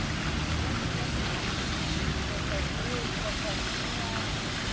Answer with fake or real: real